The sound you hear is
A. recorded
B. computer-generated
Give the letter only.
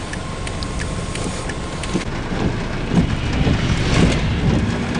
A